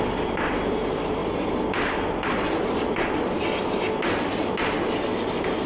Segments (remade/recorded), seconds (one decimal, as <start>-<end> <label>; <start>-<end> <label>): 0.0-1.2 recorded; 1.2-3.8 remade; 3.8-5.7 recorded